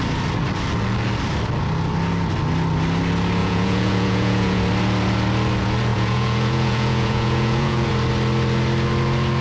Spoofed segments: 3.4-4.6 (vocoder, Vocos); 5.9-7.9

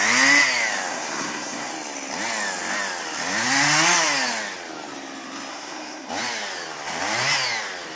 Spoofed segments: 0.9-1.7 (codec, SNAC); 5.5-6.1

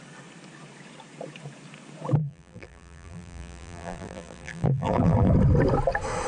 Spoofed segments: 2.2-5.3 (vocoder, BigVGAN v2)

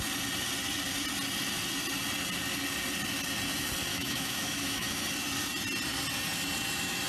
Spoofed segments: 3.9-5.0 (autoencoder, DAC-VAE)